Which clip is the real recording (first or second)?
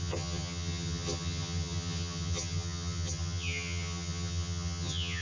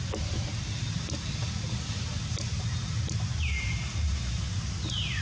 second